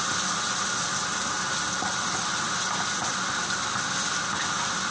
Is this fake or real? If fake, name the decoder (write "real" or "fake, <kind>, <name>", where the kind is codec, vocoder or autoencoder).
real